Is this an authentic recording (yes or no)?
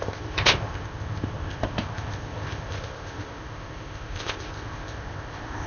no